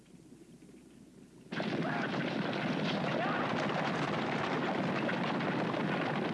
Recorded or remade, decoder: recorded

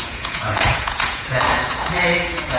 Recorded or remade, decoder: remade, vocoder, Vocos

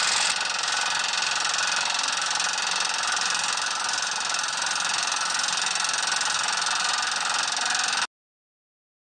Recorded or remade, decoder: recorded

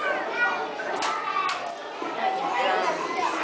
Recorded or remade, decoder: recorded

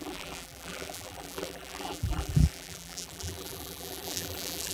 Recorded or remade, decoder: remade, vocoder, BigVGAN v2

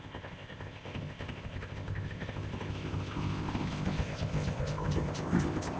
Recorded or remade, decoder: remade, codec, ZipCodec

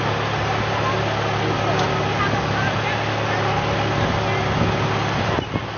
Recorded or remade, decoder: recorded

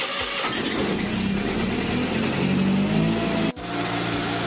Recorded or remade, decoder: recorded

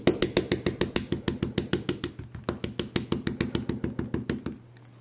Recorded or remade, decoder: recorded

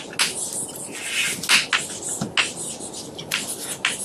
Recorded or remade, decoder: recorded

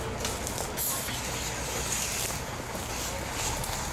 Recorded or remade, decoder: recorded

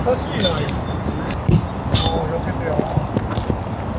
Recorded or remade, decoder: recorded